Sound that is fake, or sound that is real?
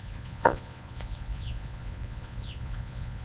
fake